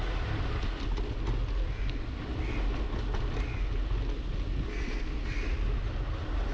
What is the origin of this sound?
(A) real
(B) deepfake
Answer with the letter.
A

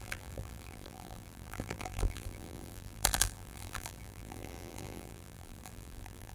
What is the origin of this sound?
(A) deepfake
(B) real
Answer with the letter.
A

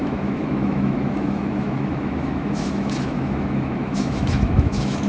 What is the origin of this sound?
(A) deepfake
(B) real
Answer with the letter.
A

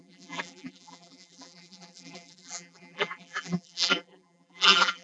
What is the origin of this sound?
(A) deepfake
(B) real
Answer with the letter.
A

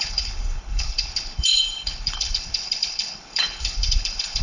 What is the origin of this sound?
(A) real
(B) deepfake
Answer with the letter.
B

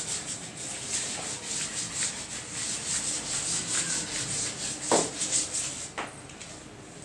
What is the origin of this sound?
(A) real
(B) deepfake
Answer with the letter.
A